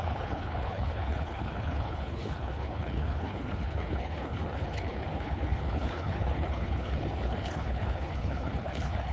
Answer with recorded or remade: remade